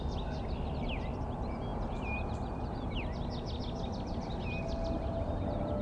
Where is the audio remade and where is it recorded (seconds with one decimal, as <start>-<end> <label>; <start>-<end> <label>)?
0.0-5.8 recorded